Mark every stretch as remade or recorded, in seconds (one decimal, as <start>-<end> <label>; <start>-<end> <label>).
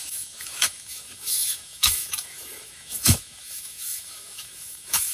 0.0-5.1 remade